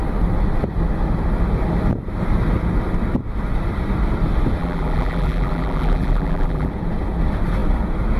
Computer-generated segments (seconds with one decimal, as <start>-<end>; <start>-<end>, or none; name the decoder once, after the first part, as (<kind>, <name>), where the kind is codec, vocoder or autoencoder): 4.6-6.7 (vocoder, BigVGAN v2)

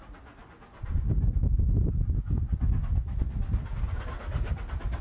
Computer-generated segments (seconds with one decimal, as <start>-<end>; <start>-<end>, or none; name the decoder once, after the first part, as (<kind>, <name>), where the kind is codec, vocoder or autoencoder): none

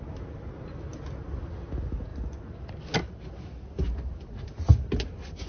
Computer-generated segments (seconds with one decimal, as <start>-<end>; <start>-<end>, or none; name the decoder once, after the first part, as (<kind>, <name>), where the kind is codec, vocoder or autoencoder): none

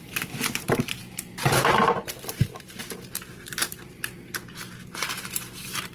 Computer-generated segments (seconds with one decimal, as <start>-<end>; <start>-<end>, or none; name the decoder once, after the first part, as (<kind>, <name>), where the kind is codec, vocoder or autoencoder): 0.0-5.9 (vocoder, BigVGAN v2)

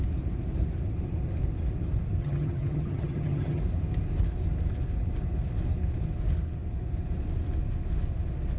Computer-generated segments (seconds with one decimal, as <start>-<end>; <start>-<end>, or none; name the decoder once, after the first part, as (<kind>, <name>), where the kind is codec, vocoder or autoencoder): 2.2-3.6 (vocoder, HiFi-GAN)

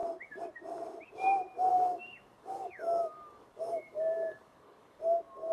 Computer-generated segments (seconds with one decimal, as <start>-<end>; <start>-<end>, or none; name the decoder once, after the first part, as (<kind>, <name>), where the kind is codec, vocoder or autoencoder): 1.7-5.0 (codec, DAC)